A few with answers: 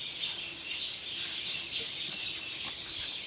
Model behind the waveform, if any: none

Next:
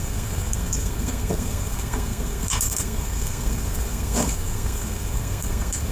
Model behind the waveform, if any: codec, SNAC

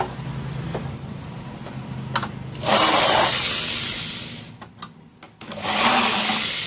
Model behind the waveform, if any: none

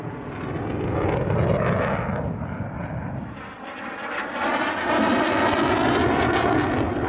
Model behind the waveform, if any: none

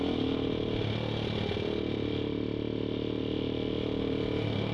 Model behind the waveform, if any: none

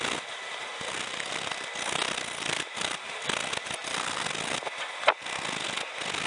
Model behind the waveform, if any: none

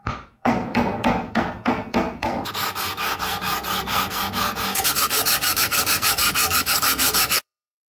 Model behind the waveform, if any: codec, SNAC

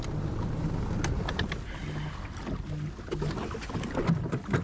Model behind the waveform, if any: none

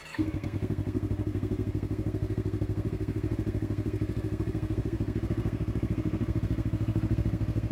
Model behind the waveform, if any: codec, SNAC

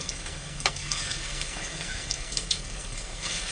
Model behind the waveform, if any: codec, SNAC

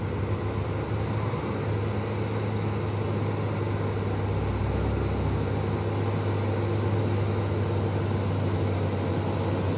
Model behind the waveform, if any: none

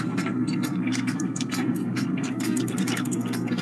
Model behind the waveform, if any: codec, SNAC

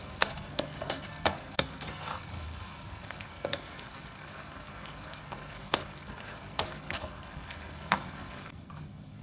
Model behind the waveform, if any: codec, SNAC